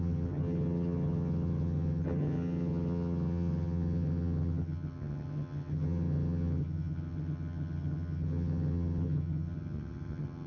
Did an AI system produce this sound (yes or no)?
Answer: yes